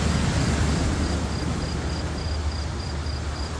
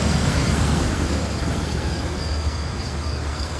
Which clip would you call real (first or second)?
first